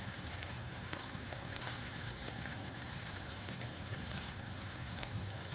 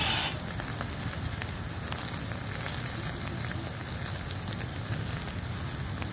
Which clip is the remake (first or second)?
first